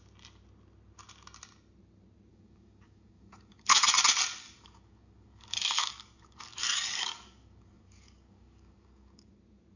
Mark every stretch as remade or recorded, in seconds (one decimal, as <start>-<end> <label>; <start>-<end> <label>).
0.0-2.3 recorded; 2.3-3.8 remade; 3.8-4.4 recorded; 4.4-9.3 remade; 9.3-9.8 recorded